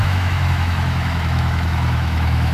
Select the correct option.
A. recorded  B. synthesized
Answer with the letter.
B